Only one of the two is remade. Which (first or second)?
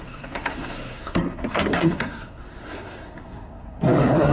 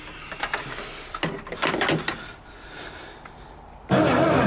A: first